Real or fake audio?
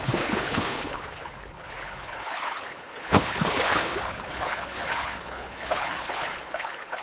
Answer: fake